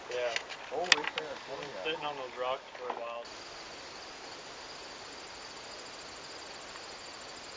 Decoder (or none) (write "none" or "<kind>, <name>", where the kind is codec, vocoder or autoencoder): none